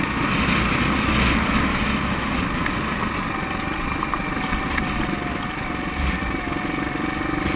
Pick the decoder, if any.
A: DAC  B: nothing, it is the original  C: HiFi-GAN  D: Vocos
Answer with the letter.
B